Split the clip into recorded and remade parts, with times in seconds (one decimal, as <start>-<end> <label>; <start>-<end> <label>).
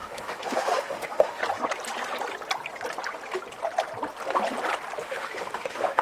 0.0-1.4 remade; 1.4-5.0 recorded; 5.0-6.0 remade